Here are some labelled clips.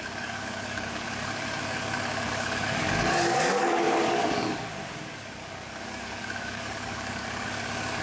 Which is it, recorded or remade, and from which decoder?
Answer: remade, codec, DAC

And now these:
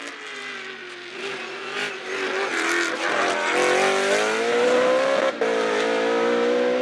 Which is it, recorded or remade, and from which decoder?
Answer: recorded